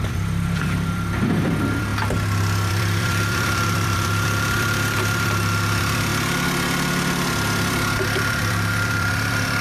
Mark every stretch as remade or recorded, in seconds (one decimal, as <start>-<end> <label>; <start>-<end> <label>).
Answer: 0.0-1.9 remade; 1.9-2.7 recorded; 2.7-6.1 remade; 6.1-7.7 recorded; 7.7-9.6 remade